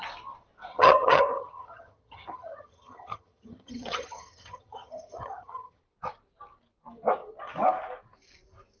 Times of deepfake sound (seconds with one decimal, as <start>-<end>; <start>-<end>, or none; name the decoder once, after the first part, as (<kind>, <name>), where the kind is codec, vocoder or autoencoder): 0.7-5.8 (vocoder, HiFi-GAN)